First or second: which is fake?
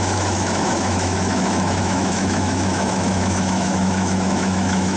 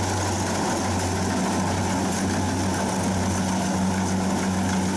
first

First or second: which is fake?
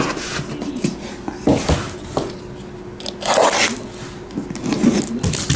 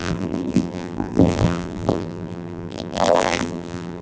second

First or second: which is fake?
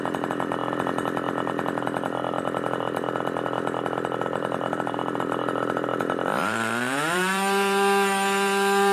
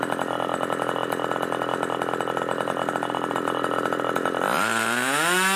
first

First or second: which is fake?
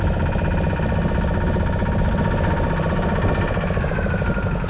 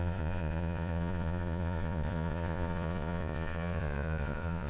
second